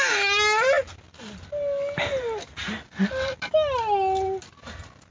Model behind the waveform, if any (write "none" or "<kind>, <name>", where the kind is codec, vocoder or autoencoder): none